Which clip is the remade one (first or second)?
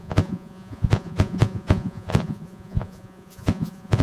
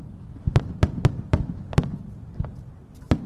first